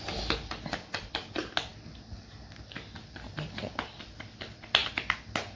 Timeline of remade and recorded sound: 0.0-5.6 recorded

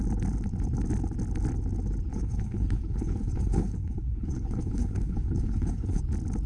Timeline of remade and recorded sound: 0.0-2.1 recorded; 2.1-6.0 remade; 6.0-6.5 recorded

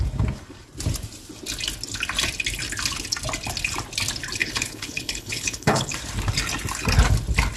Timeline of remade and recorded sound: 0.0-4.4 recorded; 4.4-5.9 remade; 5.9-7.6 recorded

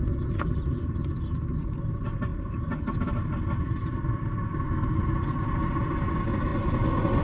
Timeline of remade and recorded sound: 0.0-7.2 recorded

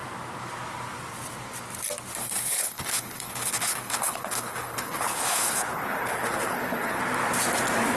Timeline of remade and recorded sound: 0.0-2.2 recorded; 2.2-7.0 remade; 7.0-8.0 recorded